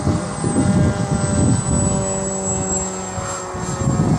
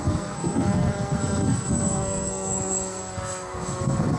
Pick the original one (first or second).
first